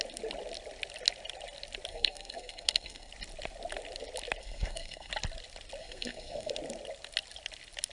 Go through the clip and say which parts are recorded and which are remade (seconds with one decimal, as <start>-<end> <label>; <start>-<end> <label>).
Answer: 0.0-1.9 recorded; 1.9-3.1 remade; 3.1-4.4 recorded; 4.4-5.1 remade; 5.1-5.8 recorded; 5.8-6.5 remade; 6.5-7.9 recorded